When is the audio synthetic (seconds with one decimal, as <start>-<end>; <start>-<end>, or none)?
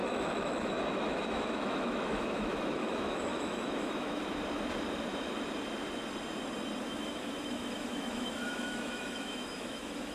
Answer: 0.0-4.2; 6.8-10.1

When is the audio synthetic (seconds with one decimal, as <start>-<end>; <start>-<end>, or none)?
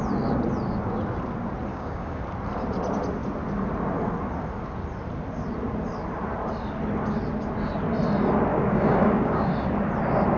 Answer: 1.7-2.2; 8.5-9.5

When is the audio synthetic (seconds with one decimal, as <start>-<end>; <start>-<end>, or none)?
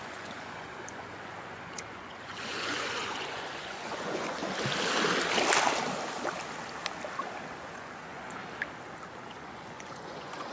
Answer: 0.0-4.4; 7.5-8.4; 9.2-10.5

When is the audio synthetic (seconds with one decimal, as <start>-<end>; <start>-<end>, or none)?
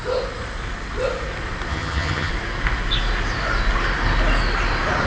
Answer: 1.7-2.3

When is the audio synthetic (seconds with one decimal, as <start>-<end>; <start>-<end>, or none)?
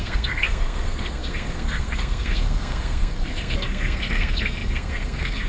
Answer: 0.0-5.5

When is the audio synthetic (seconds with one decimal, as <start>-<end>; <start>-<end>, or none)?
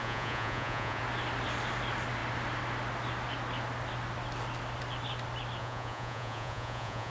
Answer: 0.0-1.0; 5.6-7.1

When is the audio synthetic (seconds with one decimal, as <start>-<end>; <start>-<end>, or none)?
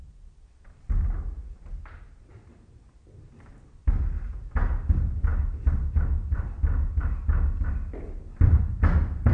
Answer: none